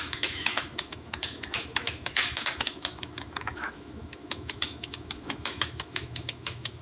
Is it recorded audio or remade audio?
remade